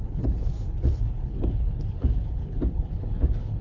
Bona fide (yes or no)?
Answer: no